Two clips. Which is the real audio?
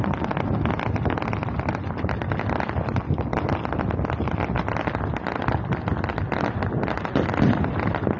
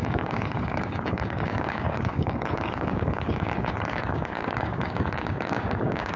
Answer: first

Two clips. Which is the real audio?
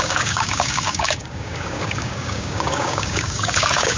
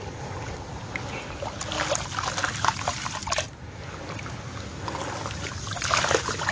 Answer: second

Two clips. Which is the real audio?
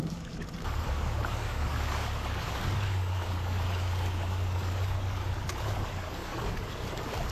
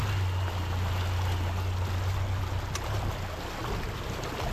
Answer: second